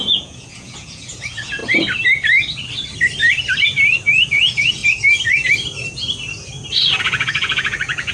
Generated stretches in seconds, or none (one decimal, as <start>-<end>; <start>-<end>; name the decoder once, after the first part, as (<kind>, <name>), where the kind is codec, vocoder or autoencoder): 0.0-1.6 (vocoder, Vocos); 4.3-4.8; 7.0-8.1